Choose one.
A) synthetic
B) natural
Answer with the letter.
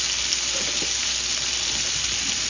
B